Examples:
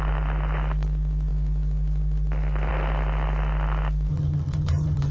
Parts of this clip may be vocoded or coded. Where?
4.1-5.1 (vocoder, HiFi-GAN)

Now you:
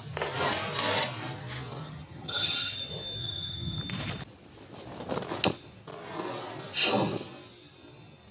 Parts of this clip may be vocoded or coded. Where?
1.8-2.8 (vocoder, HiFi-GAN); 3.2-3.8

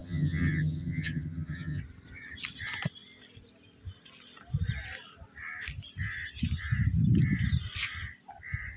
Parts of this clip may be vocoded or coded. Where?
0.0-1.8 (vocoder, HiFi-GAN)

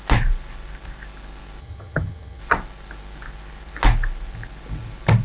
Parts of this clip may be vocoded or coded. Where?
1.6-2.4 (vocoder, HiFi-GAN)

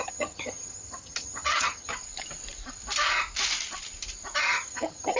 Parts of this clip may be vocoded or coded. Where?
0.0-1.9 (vocoder, HiFi-GAN); 4.4-5.2